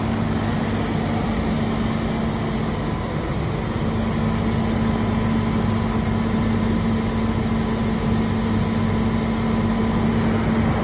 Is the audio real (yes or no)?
yes